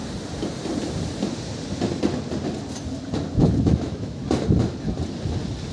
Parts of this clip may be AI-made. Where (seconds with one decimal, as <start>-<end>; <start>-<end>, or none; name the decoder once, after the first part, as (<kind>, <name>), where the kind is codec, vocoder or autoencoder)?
3.4-4.2 (autoencoder, DAC-VAE)